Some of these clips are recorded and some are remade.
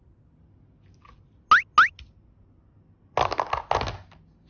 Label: recorded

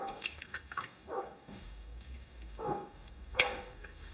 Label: remade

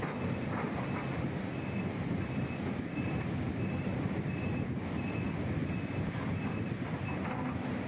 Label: recorded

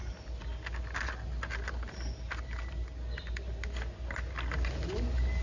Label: recorded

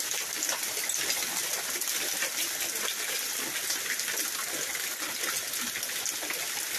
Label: recorded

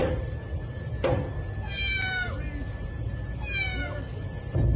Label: recorded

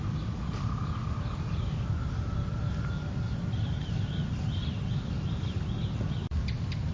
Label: recorded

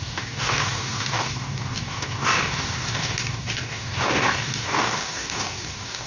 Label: remade